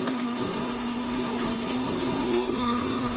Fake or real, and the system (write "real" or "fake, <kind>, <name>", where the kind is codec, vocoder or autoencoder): fake, codec, SNAC